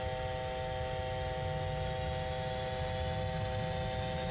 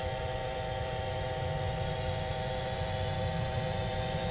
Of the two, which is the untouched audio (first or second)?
first